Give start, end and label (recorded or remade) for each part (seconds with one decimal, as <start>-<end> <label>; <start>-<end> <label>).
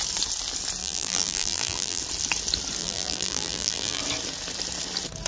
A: 0.0-0.8 recorded; 0.8-2.0 remade; 2.0-2.8 recorded; 2.8-4.0 remade; 4.0-5.3 recorded